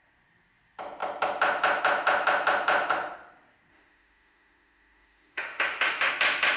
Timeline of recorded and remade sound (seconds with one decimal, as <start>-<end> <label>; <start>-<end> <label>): 0.0-3.7 recorded; 3.7-6.1 remade; 6.1-6.6 recorded